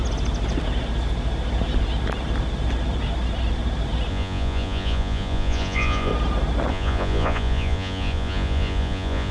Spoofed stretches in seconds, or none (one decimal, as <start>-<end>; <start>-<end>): 4.1-6.1; 6.7-9.3